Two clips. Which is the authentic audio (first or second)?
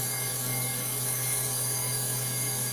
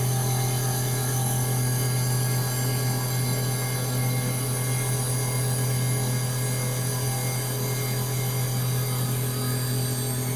second